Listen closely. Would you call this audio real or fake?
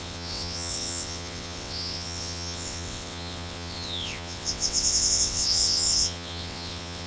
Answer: fake